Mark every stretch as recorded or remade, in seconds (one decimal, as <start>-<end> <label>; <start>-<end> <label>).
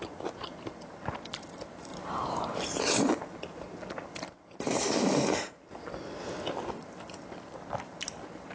0.0-8.5 recorded